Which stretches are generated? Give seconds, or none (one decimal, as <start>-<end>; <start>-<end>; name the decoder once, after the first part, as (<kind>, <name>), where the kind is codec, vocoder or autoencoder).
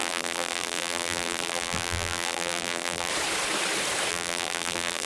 0.0-3.1 (vocoder, BigVGAN v2); 4.1-5.1